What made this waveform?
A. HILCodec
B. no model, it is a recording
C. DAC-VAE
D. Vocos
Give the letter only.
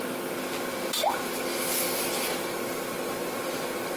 B